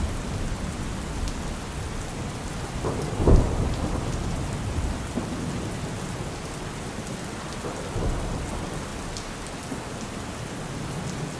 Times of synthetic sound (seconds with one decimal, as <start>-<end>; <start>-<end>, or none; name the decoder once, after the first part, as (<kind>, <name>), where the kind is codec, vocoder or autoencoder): none

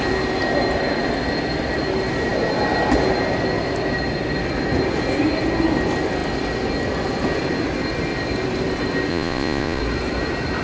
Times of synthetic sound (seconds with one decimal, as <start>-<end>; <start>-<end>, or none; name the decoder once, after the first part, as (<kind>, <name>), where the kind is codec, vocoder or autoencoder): 9.1-9.8 (vocoder, Vocos)